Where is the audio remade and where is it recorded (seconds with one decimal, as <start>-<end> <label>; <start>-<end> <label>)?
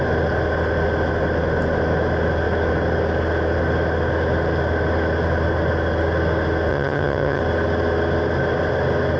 0.0-6.7 recorded; 6.7-7.4 remade; 7.4-9.2 recorded